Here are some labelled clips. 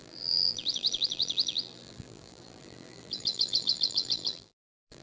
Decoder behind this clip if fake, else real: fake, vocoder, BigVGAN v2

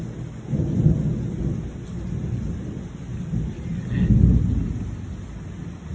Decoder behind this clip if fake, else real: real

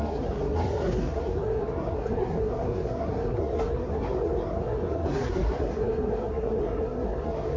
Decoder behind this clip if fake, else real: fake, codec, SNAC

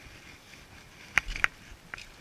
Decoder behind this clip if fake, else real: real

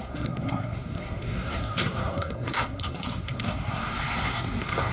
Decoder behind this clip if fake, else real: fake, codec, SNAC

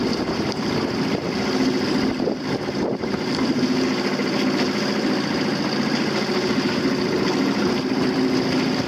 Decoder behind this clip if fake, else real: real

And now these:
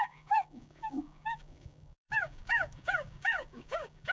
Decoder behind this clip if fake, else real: fake, codec, DAC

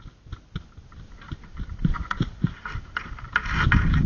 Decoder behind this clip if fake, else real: real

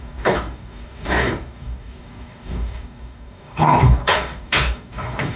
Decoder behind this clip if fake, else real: fake, codec, DAC